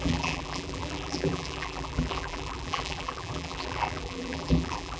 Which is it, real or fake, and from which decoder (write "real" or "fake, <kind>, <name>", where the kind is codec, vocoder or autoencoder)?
fake, vocoder, BigVGAN v2